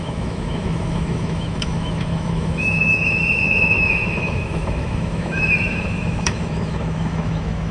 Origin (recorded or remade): remade